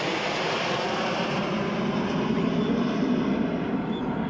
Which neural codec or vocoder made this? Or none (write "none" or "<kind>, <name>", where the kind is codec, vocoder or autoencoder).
none